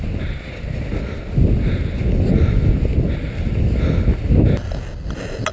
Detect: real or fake real